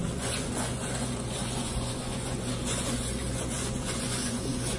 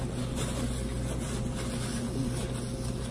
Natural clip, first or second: second